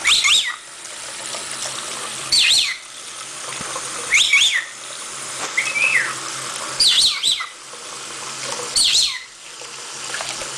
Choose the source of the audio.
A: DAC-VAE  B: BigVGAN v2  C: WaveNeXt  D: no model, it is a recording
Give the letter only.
D